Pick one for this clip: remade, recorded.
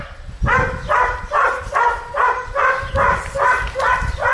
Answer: recorded